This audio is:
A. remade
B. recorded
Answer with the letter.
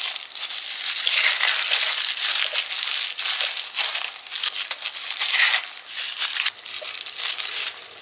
B